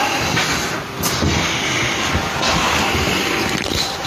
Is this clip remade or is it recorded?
recorded